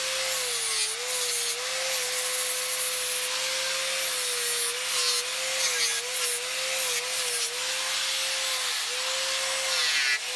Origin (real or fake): real